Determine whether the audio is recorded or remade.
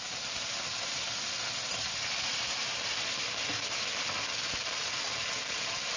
recorded